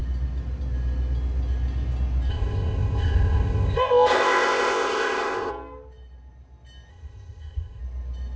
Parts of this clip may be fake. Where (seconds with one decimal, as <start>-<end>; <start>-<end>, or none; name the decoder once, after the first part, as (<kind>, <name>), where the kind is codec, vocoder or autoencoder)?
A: 2.3-5.5 (codec, ZipCodec); 6.9-7.8